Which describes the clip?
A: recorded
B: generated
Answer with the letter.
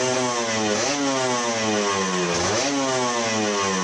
A